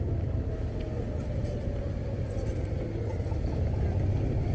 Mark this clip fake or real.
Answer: real